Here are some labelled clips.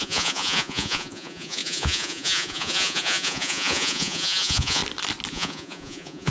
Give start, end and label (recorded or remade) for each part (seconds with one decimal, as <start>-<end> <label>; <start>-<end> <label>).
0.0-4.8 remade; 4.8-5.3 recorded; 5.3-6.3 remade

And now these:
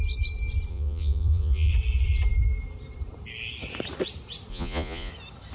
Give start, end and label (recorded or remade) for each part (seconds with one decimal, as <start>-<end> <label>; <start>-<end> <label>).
0.0-0.7 recorded; 0.7-1.7 remade; 1.7-4.5 recorded; 4.5-5.1 remade; 5.1-5.5 recorded

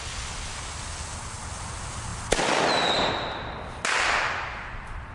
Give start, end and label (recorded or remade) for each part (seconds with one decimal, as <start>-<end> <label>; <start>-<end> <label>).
0.0-5.1 recorded